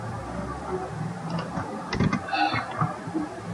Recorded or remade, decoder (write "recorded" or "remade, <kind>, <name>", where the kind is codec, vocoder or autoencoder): recorded